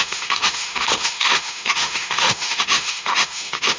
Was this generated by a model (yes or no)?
yes